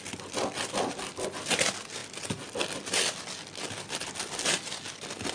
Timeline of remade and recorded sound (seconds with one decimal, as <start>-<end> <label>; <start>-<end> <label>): 0.0-5.3 recorded